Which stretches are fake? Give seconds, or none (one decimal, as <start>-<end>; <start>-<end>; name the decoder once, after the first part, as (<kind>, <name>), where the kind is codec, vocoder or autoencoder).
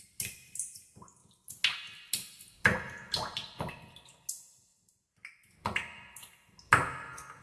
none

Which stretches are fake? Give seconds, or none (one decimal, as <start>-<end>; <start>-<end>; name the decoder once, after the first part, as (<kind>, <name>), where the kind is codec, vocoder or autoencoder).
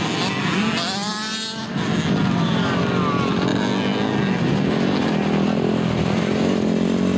5.0-6.2 (vocoder, BigVGAN v2)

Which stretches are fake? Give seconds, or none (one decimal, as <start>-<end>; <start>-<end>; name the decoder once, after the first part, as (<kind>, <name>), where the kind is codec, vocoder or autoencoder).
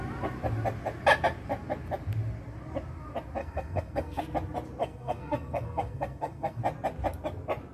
3.4-4.2 (codec, SNAC); 4.8-6.6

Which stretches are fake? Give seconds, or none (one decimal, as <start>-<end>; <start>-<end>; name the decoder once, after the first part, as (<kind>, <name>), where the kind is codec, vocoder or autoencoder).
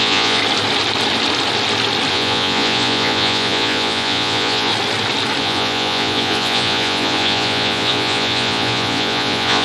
0.0-0.4 (vocoder, Vocos); 2.1-4.7; 5.4-9.6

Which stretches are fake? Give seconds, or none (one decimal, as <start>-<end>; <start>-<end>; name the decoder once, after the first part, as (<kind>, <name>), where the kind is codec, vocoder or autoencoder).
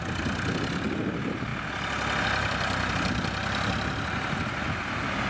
none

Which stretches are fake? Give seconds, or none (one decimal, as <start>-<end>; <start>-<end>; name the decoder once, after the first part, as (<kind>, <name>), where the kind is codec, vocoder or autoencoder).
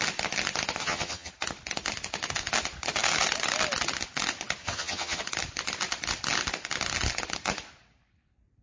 0.8-1.3 (vocoder, HiFi-GAN); 4.6-5.2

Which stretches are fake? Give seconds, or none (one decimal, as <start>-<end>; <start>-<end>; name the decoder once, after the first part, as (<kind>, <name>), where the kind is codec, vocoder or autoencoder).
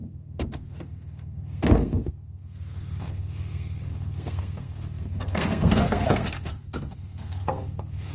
0.0-8.1 (codec, SNAC)